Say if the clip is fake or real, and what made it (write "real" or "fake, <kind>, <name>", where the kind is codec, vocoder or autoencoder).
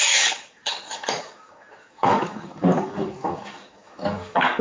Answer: fake, codec, DAC